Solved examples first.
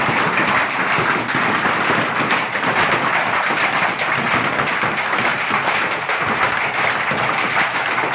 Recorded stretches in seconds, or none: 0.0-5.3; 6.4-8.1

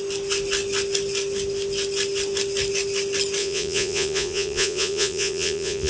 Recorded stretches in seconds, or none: 0.0-3.4

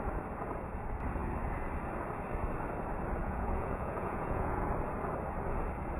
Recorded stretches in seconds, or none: 0.0-3.2; 4.7-6.0

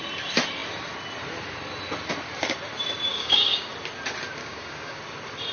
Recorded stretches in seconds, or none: 0.0-3.1; 3.7-4.4; 5.0-5.5

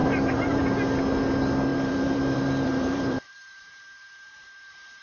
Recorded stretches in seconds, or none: 0.6-1.7

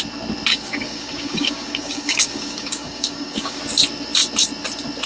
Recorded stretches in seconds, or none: 0.0-0.5; 3.6-5.1

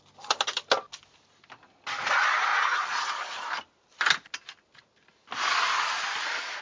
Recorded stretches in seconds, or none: 0.0-6.6